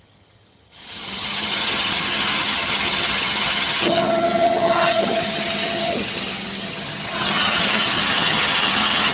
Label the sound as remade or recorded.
remade